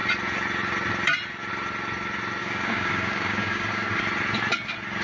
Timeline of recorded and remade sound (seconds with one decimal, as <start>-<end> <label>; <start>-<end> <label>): 0.0-2.4 recorded; 2.4-4.0 remade; 4.0-5.0 recorded